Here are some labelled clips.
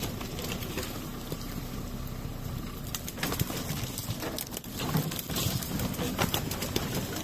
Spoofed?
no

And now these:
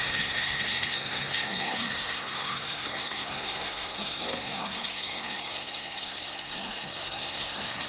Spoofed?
yes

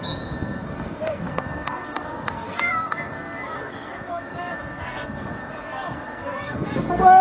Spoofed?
yes